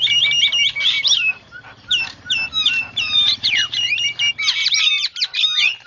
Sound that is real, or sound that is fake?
fake